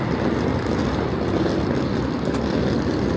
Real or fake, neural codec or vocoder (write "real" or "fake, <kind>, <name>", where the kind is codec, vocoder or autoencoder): real